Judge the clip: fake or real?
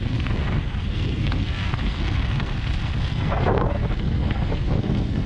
fake